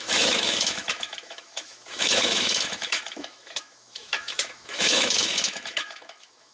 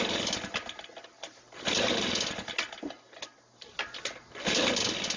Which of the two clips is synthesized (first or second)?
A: first